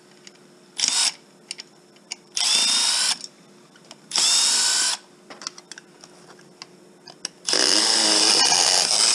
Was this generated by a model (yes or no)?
no